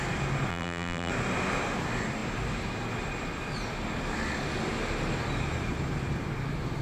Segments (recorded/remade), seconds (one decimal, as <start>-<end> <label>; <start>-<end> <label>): 0.0-0.5 recorded; 0.5-1.1 remade; 1.1-6.8 recorded